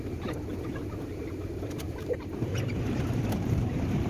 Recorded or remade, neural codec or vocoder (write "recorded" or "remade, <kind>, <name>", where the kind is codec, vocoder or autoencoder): remade, vocoder, BigVGAN v2